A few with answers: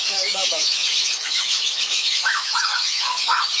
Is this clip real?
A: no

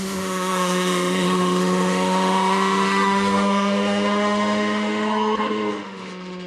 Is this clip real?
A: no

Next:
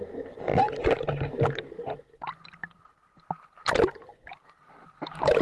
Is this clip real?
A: yes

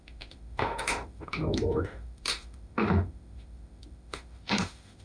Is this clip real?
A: no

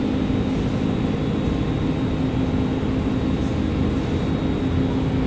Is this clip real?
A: yes